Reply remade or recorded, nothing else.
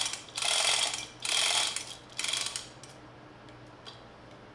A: recorded